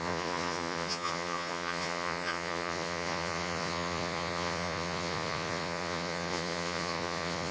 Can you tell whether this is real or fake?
fake